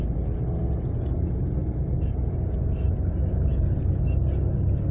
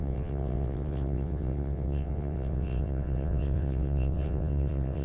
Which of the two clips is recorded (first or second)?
first